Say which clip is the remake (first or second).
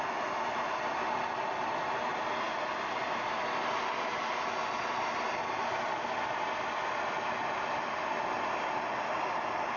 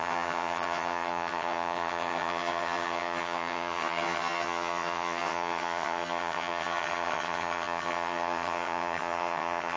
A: second